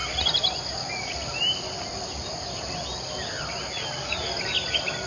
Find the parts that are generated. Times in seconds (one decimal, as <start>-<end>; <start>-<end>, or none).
none